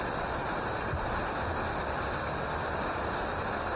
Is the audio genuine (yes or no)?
yes